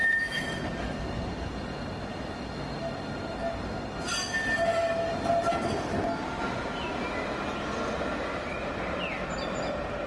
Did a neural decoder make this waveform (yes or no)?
no